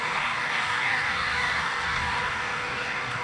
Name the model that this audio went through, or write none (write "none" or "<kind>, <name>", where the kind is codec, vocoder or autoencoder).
codec, DAC